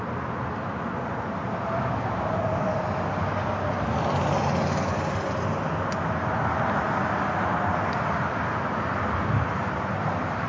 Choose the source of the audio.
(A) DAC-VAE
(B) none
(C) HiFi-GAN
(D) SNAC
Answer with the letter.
B